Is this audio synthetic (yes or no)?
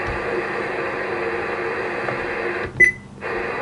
no